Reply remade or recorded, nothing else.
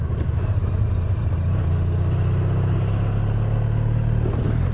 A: recorded